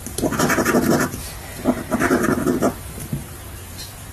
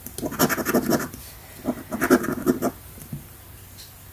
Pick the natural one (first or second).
second